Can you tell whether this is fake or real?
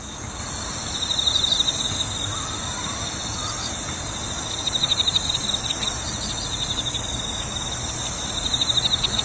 real